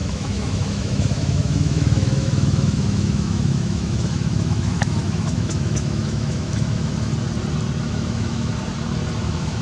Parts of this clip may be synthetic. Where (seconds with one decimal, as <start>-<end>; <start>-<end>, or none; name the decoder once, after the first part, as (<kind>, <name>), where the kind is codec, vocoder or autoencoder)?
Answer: 0.0-7.1 (autoencoder, DAC-VAE); 7.8-8.5; 9.2-9.6